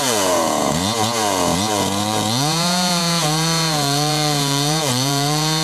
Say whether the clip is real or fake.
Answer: fake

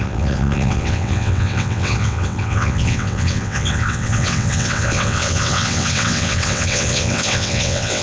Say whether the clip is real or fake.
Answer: fake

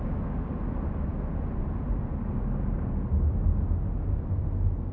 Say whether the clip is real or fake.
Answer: real